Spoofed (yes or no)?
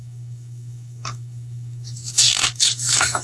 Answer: yes